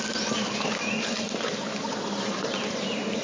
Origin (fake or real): real